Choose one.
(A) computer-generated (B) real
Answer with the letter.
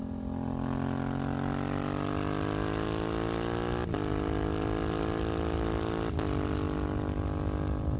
B